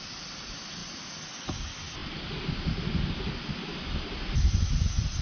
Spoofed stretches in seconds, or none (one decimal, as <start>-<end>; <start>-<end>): none